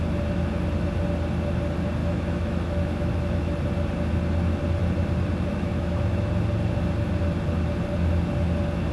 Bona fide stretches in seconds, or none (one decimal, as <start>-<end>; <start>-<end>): 0.0-2.0; 3.5-5.5; 6.3-8.9